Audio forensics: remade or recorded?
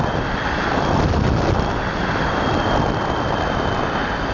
recorded